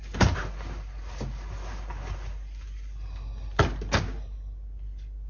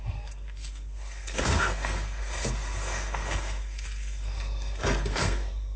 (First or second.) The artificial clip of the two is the second